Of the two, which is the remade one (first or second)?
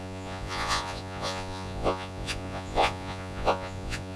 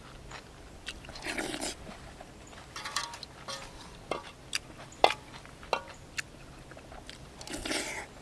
first